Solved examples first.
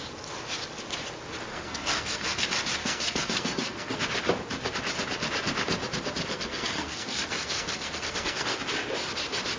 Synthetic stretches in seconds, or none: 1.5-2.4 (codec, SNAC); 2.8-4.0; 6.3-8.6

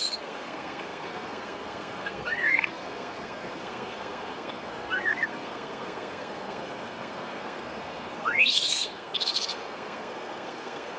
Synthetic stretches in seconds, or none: 0.0-11.0 (codec, SNAC)

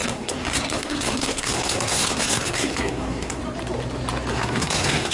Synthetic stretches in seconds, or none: 0.0-3.4 (codec, SNAC); 4.3-5.1

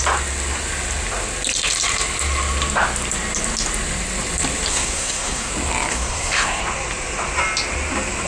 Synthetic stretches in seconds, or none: 4.7-5.5 (codec, SNAC); 5.9-6.6